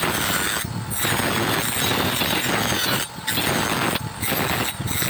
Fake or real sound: real